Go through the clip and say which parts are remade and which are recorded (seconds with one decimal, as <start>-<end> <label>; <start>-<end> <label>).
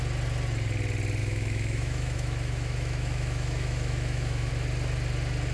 0.0-1.2 recorded; 1.2-4.5 remade; 4.5-5.5 recorded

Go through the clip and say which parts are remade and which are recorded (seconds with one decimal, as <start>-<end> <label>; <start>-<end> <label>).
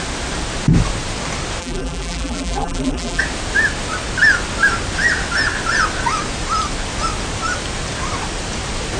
0.0-1.6 recorded; 1.6-3.2 remade; 3.2-9.0 recorded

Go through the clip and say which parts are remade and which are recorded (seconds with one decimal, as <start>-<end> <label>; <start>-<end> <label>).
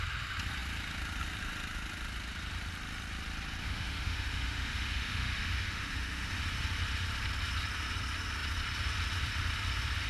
0.0-3.6 recorded; 3.6-6.4 remade; 6.4-10.1 recorded